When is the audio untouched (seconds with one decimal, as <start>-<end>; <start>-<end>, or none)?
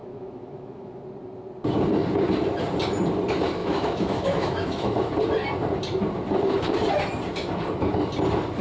1.0-3.6; 5.1-8.6